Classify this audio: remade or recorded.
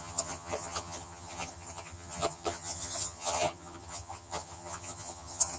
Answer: remade